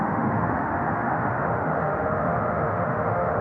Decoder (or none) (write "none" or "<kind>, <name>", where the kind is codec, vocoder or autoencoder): autoencoder, DAC-VAE